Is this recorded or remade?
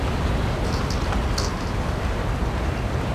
recorded